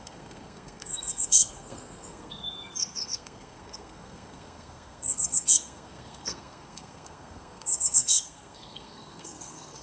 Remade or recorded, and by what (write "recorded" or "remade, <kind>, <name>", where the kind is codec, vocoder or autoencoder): remade, codec, SNAC